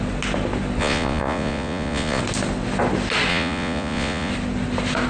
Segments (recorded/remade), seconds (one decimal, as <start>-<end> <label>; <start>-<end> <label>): 0.0-0.8 recorded; 0.8-2.2 remade; 2.2-3.3 recorded; 3.3-4.3 remade; 4.3-5.1 recorded